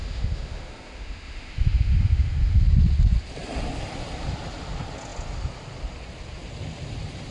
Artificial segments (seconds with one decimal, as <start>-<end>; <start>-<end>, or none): 0.0-2.7